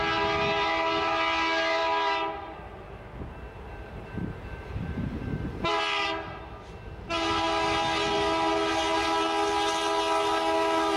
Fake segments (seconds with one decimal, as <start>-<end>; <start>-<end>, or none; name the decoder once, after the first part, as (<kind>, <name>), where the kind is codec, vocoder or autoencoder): 1.8-6.1 (vocoder, BigVGAN v2)

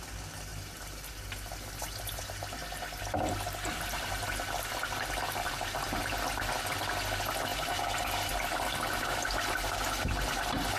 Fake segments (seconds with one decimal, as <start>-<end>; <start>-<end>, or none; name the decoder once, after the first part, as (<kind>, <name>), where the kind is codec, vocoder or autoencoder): 0.5-2.2 (vocoder, BigVGAN v2); 2.6-6.0; 7.5-10.8